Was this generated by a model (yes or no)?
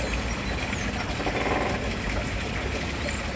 no